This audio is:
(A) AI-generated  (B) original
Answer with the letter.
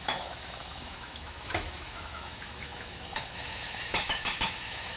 A